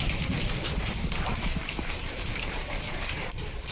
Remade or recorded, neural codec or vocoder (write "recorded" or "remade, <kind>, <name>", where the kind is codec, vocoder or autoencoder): remade, vocoder, BigVGAN v2